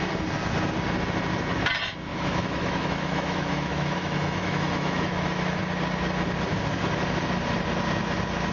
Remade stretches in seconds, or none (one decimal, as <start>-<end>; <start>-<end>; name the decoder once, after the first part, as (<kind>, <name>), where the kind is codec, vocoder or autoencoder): 2.1-5.6 (autoencoder, DAC-VAE)